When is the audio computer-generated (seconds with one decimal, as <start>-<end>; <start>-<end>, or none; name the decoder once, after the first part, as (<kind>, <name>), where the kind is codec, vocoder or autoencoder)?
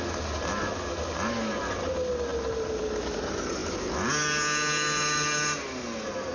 none